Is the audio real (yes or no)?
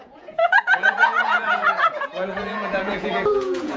no